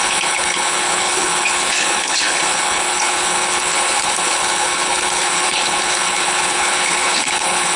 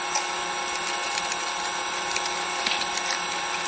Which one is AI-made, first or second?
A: first